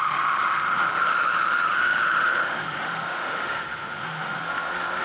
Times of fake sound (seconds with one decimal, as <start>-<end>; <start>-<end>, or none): 0.0-4.4